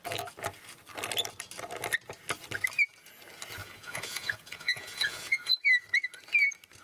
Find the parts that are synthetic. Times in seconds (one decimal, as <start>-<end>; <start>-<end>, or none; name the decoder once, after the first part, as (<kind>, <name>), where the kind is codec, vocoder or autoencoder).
3.6-5.6 (vocoder, Vocos)